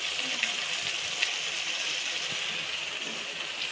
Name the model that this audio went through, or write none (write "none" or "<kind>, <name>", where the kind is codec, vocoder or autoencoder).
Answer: none